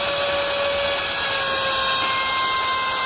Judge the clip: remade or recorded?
recorded